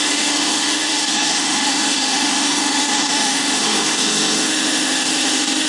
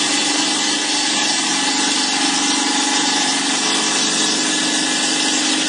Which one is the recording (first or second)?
second